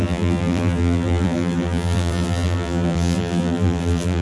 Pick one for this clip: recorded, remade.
remade